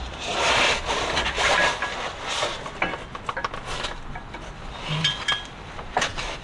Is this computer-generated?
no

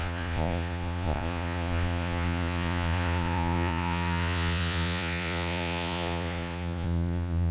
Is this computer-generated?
yes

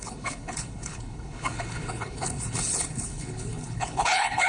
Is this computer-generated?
yes